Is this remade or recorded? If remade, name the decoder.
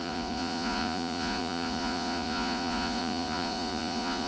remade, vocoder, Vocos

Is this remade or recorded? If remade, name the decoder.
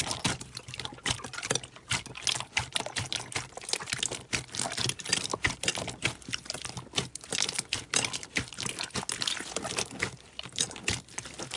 recorded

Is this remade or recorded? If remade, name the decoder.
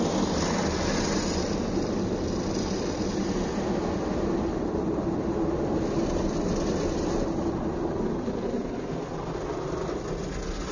recorded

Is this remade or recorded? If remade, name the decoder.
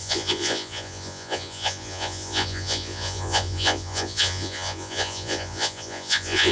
remade, vocoder, Vocos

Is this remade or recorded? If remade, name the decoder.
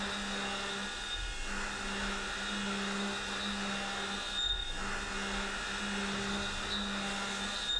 recorded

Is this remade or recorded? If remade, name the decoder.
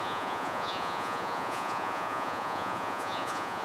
remade, vocoder, Vocos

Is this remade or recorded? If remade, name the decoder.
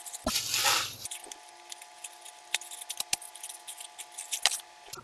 recorded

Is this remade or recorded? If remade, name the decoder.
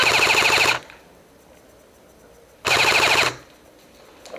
recorded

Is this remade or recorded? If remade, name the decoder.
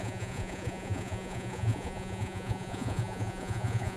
remade, vocoder, Vocos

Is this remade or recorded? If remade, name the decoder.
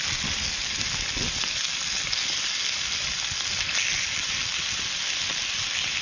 recorded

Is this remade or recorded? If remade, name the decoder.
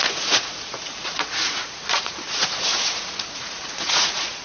remade, vocoder, Vocos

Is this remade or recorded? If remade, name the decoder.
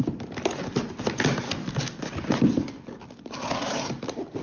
recorded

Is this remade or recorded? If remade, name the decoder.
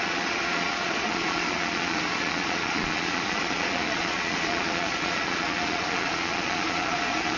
remade, vocoder, Vocos